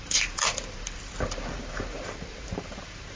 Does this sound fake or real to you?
fake